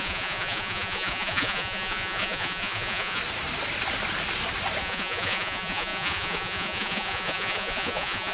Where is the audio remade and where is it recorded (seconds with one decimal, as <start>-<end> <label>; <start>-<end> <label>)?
0.0-3.2 remade; 3.2-4.8 recorded; 4.8-8.3 remade

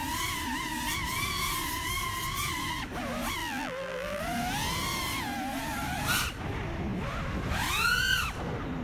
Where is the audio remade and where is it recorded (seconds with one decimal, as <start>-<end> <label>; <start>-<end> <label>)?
0.0-3.4 recorded; 3.4-4.2 remade; 4.2-8.8 recorded

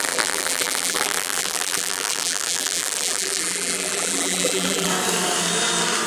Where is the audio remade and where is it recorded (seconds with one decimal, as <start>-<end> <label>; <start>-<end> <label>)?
0.0-4.9 remade; 4.9-6.1 recorded